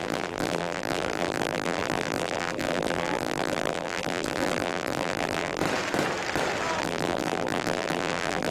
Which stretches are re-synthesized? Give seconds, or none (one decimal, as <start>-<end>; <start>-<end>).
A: 0.0-5.6; 6.8-8.5

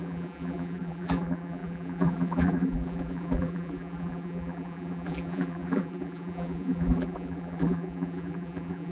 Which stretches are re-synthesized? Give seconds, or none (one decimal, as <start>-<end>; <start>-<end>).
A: 0.0-8.9

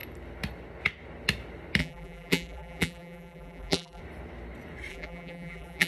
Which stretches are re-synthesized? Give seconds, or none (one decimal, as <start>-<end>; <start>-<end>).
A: 1.8-4.0; 4.9-5.9

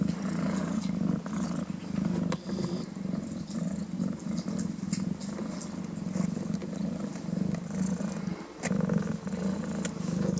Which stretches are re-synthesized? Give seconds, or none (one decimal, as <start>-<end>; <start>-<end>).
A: 1.8-4.0

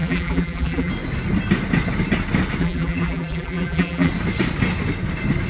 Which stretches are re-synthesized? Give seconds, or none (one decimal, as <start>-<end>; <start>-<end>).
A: 0.0-0.9; 2.6-4.1

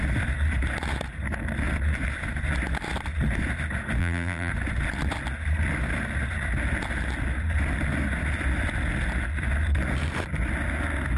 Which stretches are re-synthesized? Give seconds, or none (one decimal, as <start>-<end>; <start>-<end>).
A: 4.0-4.5

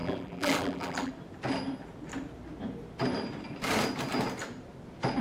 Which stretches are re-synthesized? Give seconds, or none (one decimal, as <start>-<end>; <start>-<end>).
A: 0.0-1.1

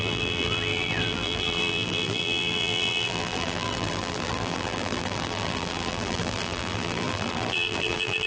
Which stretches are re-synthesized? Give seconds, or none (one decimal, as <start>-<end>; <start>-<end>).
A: 0.0-8.3